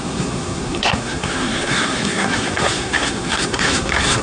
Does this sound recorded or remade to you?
remade